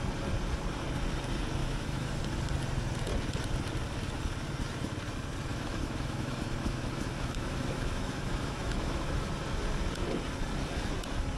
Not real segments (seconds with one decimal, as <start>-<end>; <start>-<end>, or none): 1.6-2.2; 5.5-9.3